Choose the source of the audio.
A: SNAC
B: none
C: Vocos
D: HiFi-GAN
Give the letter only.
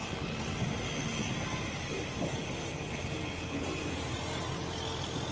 B